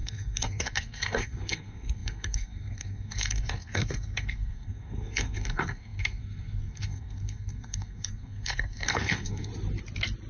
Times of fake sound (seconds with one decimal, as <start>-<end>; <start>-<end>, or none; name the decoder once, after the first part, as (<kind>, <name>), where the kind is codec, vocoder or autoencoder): 0.0-9.5 (codec, SNAC)